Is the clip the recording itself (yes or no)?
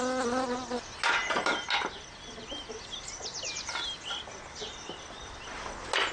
yes